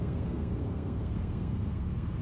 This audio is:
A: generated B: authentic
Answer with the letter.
A